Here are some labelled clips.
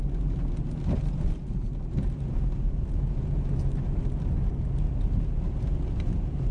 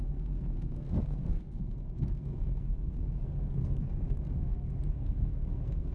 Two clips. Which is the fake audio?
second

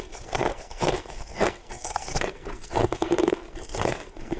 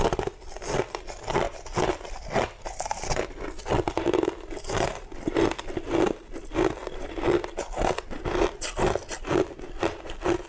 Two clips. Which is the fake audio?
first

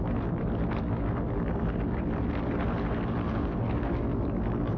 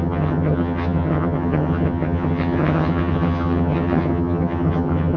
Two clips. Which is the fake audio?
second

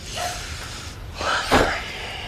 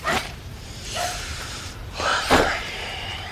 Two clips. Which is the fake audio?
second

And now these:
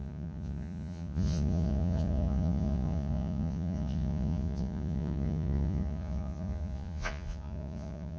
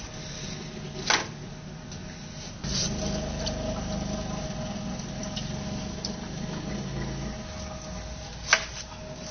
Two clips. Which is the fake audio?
first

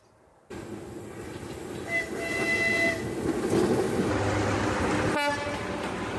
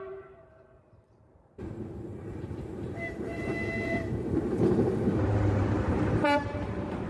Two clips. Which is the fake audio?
second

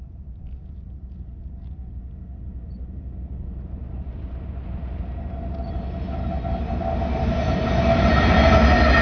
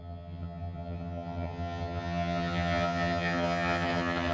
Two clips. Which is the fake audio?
second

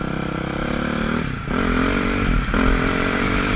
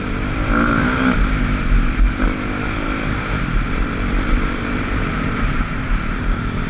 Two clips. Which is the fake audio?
second